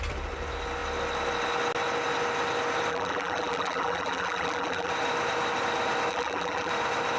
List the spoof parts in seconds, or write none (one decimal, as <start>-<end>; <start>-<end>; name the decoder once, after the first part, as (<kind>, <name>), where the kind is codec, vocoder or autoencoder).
2.9-4.9 (vocoder, BigVGAN v2); 6.1-6.7